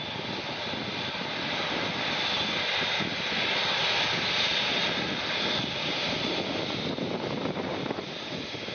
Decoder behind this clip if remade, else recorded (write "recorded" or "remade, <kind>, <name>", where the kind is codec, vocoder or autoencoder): recorded